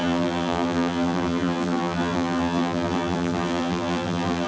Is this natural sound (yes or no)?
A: no